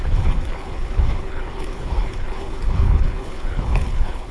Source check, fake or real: fake